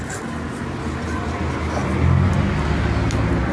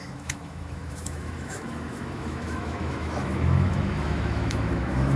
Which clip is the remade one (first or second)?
second